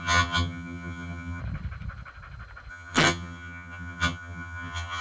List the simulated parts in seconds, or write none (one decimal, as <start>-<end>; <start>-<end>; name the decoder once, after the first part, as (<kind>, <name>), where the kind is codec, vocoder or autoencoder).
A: 0.0-1.4 (vocoder, HiFi-GAN); 2.7-5.0